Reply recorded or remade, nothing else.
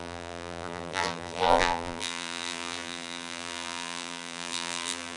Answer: remade